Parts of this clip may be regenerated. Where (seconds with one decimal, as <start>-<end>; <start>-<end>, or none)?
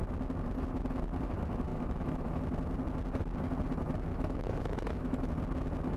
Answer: 1.7-2.4; 4.1-5.3